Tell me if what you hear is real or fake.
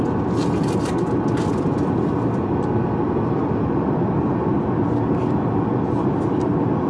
real